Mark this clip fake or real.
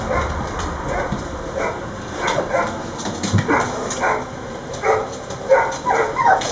real